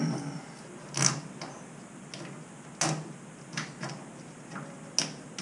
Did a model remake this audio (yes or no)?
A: no